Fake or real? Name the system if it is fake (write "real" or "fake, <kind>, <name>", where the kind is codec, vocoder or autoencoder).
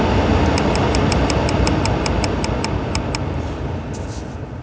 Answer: real